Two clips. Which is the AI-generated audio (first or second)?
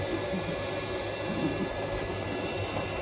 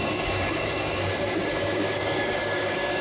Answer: second